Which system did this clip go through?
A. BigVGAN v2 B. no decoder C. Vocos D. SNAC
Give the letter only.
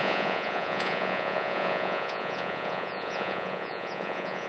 C